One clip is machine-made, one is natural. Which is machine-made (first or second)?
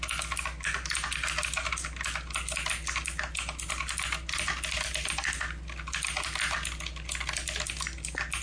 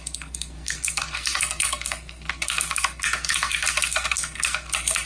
second